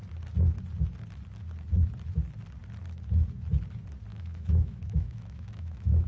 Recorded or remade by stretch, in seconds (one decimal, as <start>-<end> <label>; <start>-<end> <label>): 0.0-4.1 recorded; 4.1-6.1 remade